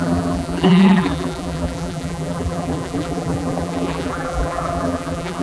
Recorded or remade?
remade